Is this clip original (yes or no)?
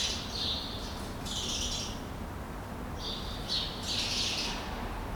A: yes